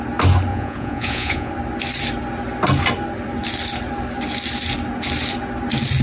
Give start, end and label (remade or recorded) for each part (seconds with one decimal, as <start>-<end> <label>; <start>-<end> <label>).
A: 0.0-0.5 recorded; 0.5-1.5 remade; 1.5-6.0 recorded